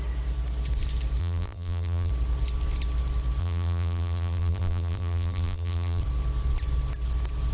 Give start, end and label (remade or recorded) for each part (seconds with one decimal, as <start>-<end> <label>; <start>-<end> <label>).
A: 0.0-1.2 recorded; 1.2-2.1 remade; 2.1-3.4 recorded; 3.4-6.0 remade; 6.0-7.5 recorded